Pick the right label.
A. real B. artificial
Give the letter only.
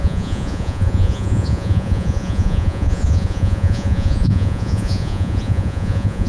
B